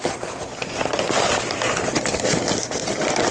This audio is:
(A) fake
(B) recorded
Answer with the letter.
B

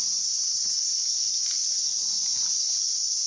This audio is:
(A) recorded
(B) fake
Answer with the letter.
A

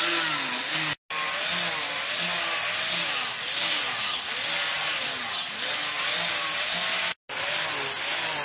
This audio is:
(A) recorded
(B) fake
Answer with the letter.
A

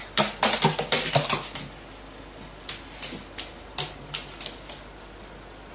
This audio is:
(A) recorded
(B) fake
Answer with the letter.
A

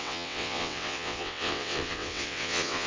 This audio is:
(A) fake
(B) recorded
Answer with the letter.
A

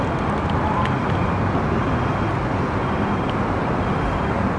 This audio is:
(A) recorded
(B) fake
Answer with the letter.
A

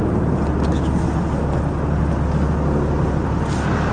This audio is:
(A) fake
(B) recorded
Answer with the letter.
B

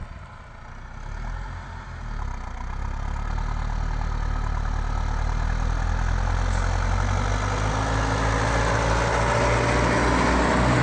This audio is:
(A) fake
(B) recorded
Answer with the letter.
B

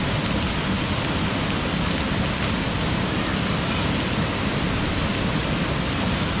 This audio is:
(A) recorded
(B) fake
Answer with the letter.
A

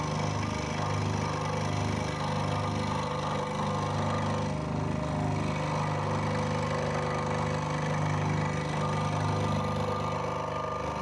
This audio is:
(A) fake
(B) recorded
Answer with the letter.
B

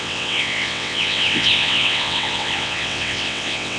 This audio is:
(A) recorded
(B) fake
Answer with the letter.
B